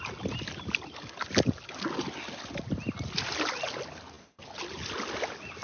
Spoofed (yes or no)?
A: no